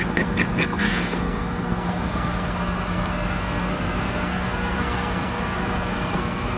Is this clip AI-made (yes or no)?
yes